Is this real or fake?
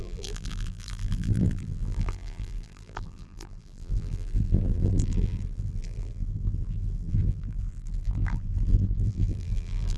fake